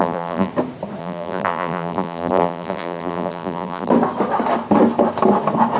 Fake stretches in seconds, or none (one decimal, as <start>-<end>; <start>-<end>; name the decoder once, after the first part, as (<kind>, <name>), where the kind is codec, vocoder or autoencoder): 0.0-0.5 (vocoder, BigVGAN v2); 1.0-3.9